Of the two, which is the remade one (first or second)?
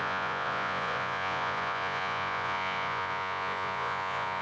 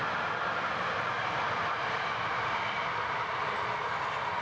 first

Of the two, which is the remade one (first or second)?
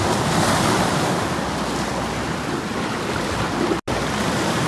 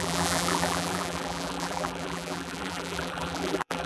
second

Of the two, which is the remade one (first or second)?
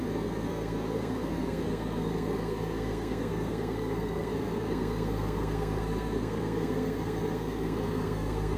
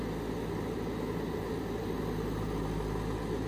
first